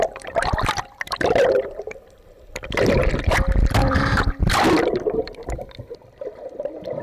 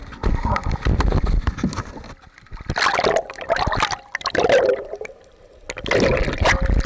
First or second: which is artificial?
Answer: first